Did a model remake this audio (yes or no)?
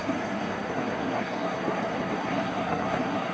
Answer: yes